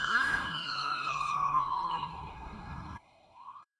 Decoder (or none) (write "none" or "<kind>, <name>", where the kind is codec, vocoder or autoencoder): codec, SNAC